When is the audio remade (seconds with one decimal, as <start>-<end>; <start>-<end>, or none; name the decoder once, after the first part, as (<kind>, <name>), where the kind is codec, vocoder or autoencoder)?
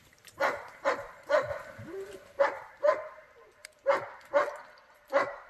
0.0-1.5 (vocoder, BigVGAN v2); 2.4-3.6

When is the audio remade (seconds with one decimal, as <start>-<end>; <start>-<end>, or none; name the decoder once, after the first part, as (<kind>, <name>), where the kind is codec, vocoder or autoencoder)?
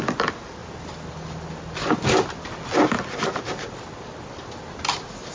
none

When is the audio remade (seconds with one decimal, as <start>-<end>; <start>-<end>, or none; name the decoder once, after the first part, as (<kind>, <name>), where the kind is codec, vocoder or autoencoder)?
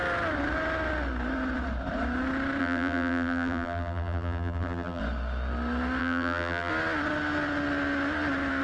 2.6-5.0 (vocoder, BigVGAN v2); 6.0-6.7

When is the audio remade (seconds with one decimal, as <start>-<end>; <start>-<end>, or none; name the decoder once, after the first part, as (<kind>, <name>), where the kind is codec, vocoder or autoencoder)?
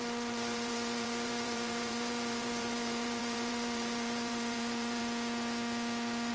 0.0-5.0 (vocoder, BigVGAN v2)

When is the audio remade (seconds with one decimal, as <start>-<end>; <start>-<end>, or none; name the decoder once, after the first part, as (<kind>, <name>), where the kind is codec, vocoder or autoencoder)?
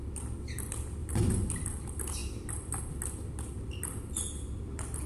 1.0-1.5 (vocoder, BigVGAN v2)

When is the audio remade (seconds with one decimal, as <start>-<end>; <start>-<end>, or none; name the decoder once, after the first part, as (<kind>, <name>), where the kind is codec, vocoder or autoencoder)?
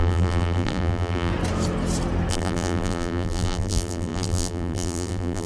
0.0-1.3 (vocoder, BigVGAN v2); 2.3-5.5